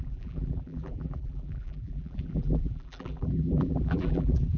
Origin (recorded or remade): remade